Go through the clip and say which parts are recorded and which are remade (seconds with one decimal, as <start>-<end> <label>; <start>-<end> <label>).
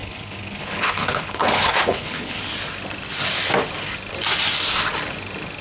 0.0-2.4 remade; 2.4-5.6 recorded